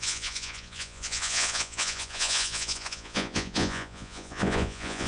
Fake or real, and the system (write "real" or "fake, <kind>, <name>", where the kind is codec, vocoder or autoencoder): fake, vocoder, Vocos